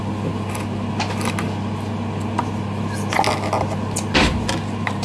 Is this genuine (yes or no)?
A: yes